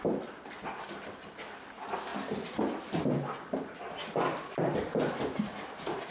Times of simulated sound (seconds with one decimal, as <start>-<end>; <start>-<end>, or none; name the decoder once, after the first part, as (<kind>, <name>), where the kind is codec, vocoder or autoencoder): none